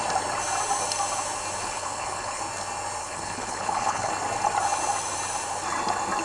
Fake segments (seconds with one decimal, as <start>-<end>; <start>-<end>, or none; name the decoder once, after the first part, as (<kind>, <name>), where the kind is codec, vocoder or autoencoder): 1.6-2.4 (codec, HILCodec); 3.0-4.1